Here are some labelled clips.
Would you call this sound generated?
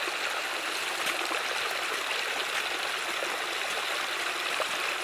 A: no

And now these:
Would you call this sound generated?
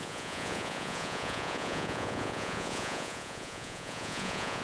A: yes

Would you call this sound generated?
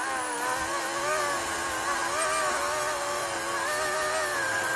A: no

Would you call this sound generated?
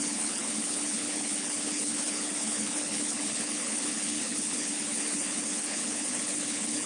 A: yes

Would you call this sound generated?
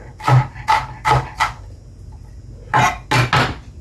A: no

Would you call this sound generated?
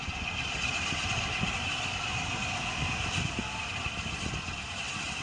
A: no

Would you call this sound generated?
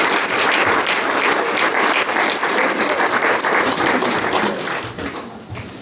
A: yes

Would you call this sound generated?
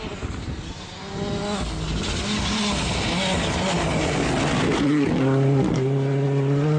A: no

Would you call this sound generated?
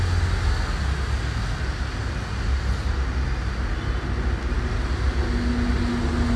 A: no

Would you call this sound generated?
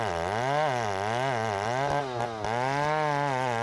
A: no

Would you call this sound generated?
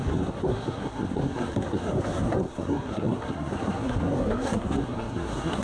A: yes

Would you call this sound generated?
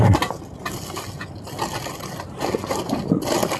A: no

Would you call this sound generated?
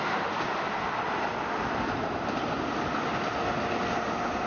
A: no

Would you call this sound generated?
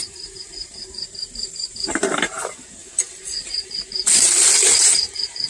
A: yes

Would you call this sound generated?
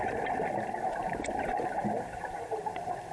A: no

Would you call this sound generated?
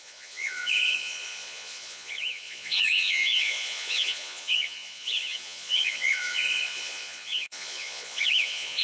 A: yes